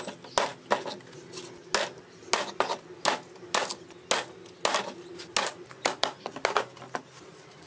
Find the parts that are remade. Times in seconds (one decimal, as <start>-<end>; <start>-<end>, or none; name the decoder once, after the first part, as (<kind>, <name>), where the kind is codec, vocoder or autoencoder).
none

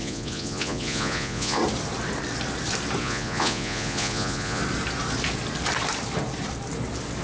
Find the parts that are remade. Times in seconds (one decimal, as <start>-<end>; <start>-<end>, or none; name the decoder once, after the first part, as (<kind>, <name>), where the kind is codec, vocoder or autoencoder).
0.0-1.6 (vocoder, Vocos); 3.0-4.6

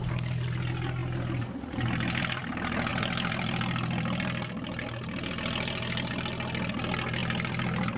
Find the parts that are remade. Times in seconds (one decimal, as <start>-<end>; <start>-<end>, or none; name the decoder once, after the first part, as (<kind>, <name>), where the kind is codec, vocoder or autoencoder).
1.0-2.5 (vocoder, BigVGAN v2); 2.9-6.1; 7.2-8.0

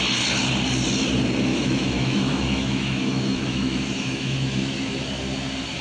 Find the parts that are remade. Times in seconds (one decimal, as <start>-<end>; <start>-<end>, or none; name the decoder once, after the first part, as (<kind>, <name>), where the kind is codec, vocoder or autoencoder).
1.5-5.0 (autoencoder, DAC-VAE)